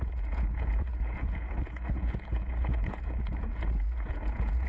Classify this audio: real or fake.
fake